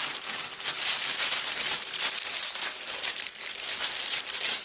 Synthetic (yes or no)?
yes